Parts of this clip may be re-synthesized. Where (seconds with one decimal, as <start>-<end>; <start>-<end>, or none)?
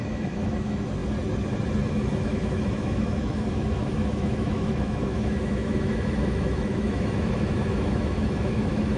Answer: 0.0-1.0; 1.9-9.0